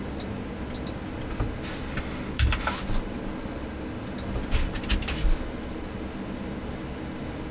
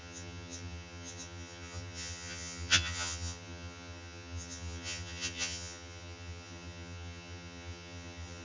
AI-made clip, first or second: second